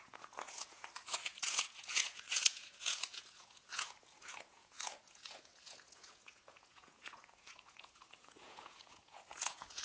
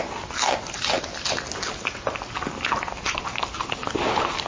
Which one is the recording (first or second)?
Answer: second